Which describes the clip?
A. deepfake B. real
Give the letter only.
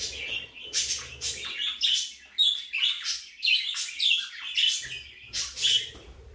B